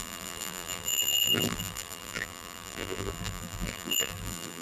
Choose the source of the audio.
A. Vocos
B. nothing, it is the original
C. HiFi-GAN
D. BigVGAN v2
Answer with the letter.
D